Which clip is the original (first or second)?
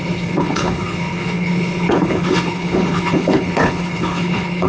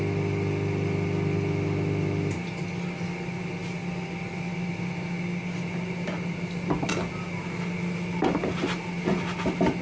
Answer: second